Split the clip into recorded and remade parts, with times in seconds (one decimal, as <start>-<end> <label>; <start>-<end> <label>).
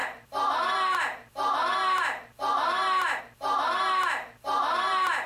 0.0-5.3 remade